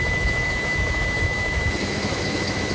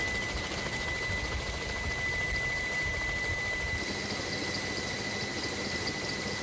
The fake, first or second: first